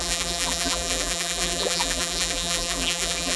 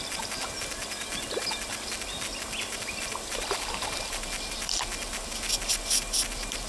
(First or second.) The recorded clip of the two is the second